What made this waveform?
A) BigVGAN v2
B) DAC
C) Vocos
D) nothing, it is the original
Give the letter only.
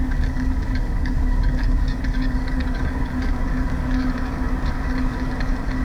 B